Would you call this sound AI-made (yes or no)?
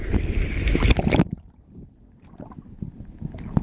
no